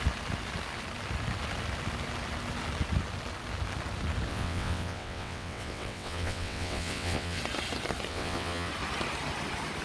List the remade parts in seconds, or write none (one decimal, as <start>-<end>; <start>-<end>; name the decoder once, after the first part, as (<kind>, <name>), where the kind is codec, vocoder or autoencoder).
4.3-7.4 (vocoder, WaveNeXt); 8.1-8.7